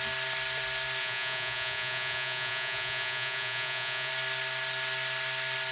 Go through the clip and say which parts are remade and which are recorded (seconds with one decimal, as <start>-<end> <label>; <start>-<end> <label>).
0.0-1.0 recorded; 1.0-4.1 remade; 4.1-5.7 recorded